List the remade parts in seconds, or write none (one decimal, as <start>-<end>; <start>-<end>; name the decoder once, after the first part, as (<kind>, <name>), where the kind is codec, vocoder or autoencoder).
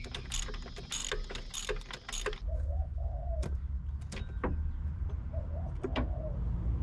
none